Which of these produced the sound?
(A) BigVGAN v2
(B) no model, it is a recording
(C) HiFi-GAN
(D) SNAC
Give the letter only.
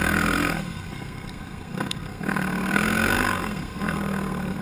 D